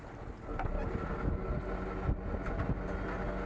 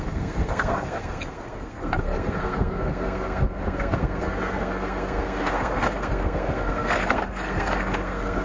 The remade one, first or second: second